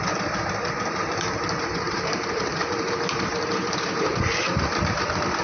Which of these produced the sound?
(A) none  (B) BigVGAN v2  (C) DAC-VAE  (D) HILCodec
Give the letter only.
B